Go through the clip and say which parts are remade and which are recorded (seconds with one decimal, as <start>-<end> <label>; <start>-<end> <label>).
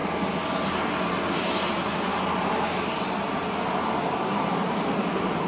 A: 0.0-5.5 recorded